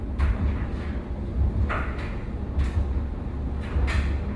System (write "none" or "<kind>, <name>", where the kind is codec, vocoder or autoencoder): none